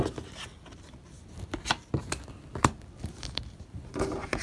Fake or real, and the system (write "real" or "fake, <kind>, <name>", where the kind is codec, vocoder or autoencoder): real